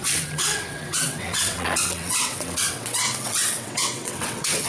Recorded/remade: remade